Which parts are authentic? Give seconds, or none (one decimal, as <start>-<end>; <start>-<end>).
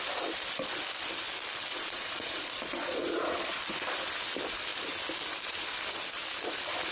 0.0-1.7; 3.6-6.9